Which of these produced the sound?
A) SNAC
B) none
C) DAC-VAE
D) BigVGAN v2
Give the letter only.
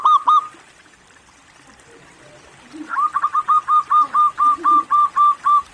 B